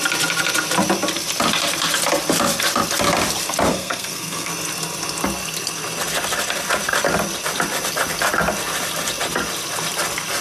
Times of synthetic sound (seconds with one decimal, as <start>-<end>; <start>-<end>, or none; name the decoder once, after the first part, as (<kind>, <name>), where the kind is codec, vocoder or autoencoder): 3.7-4.5 (codec, SNAC)